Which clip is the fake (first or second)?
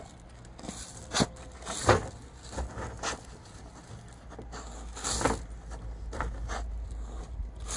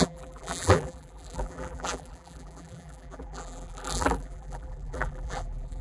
second